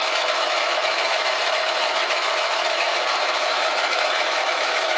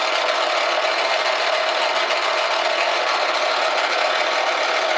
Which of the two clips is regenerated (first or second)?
first